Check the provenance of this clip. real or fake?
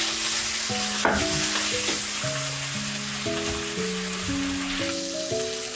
real